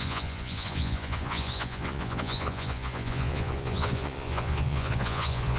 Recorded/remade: remade